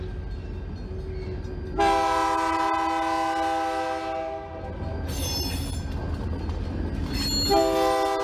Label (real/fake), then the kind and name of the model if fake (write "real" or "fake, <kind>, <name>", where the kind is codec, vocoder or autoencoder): real